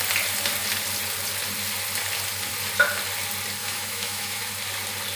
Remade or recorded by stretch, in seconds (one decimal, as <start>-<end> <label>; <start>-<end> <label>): 0.0-3.6 recorded; 3.6-4.4 remade; 4.4-5.2 recorded